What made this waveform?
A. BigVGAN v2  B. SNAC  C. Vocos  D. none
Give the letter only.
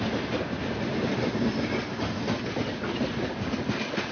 D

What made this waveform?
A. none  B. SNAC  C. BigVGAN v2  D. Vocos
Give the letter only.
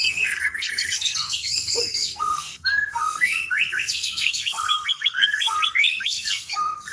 B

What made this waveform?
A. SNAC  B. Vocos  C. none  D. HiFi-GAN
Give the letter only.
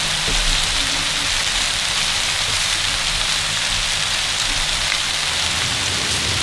C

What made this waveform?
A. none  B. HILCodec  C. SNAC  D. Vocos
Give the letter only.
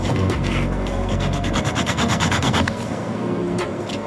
C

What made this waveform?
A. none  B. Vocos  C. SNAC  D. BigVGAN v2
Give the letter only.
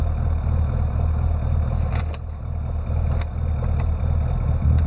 A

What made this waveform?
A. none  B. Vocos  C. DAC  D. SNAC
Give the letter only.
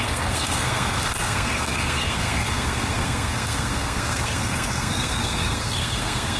D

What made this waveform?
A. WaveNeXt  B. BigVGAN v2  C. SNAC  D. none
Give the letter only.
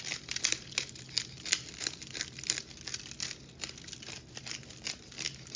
D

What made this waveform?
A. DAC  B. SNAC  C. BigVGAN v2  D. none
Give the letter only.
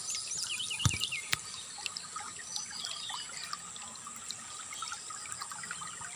D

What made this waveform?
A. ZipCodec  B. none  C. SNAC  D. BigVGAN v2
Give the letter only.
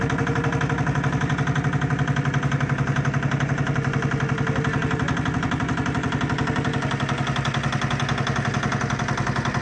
B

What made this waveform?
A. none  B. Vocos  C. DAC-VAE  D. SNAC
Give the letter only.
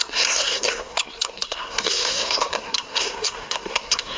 D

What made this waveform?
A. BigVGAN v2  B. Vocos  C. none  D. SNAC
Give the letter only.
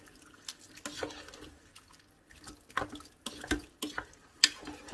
C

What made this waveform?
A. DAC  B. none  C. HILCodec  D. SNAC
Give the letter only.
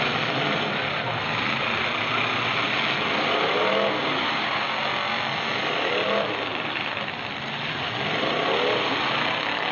B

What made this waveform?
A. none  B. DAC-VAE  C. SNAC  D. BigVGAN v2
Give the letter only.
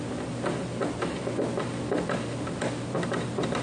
A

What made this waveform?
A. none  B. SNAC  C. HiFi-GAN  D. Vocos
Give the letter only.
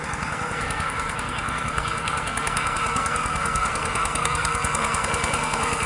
B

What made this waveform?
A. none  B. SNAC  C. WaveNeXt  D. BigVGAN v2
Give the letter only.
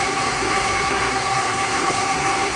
B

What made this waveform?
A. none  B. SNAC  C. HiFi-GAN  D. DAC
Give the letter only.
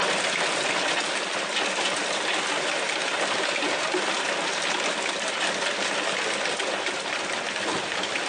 A